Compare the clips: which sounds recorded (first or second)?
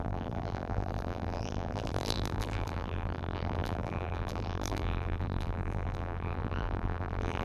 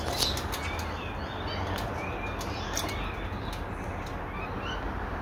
second